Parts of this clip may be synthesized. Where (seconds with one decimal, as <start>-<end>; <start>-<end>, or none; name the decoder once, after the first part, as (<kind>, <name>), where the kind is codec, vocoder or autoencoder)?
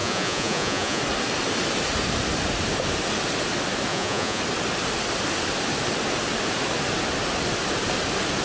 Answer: 0.0-1.0 (vocoder, Vocos); 3.9-4.4